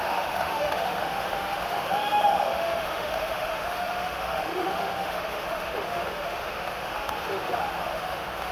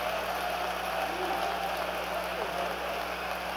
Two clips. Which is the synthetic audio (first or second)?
first